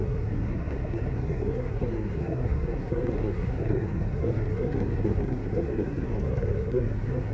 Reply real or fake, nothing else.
fake